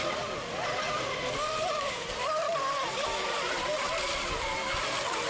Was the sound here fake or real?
real